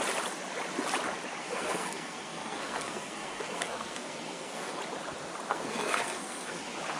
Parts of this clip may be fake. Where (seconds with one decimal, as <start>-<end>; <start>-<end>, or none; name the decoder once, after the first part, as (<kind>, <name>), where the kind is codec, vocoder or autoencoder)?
1.4-4.8 (codec, SNAC); 5.5-6.6